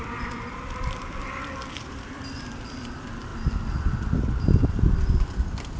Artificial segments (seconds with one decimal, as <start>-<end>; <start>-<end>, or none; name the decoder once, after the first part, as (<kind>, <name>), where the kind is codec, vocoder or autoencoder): 0.0-3.3 (vocoder, BigVGAN v2); 4.2-5.8